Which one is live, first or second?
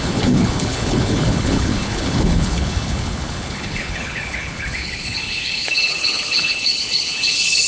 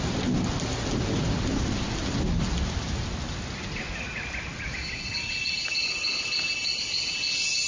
second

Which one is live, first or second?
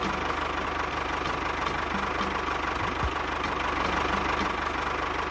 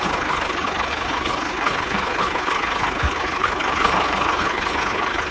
first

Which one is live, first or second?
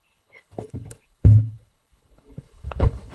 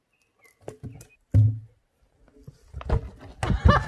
second